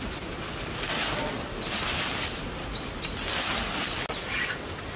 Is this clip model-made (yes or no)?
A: no